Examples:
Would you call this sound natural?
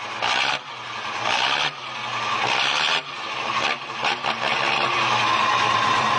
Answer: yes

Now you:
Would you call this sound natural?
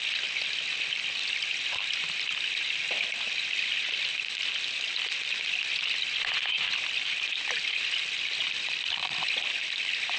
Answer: no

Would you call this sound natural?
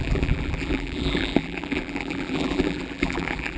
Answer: no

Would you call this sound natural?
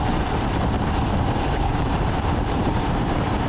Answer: no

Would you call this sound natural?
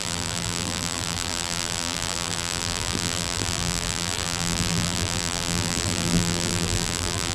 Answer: no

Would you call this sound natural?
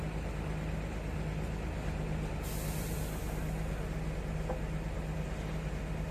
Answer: yes